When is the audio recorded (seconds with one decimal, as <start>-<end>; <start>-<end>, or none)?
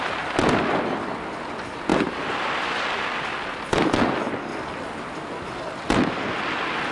0.0-6.9